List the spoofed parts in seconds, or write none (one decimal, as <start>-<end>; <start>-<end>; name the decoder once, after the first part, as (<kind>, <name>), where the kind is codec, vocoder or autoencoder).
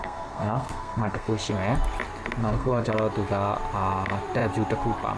0.0-1.5 (codec, SNAC); 2.4-2.9